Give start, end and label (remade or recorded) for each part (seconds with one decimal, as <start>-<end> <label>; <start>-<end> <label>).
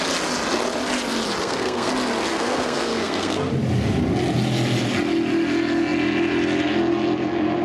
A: 0.0-1.4 recorded; 1.4-1.9 remade; 1.9-2.3 recorded; 2.3-3.5 remade; 3.5-7.6 recorded